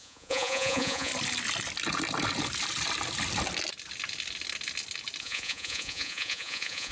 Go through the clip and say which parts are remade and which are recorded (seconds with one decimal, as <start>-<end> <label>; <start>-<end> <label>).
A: 0.0-1.1 remade; 1.1-5.2 recorded; 5.2-6.9 remade